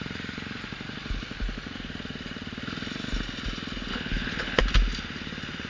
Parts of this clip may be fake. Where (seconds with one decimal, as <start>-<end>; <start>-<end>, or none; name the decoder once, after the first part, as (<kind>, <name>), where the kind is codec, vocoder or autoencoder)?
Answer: 3.9-4.6 (codec, HILCodec)